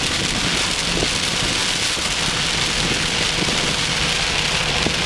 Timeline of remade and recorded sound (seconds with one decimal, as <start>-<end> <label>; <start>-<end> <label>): 0.0-5.1 recorded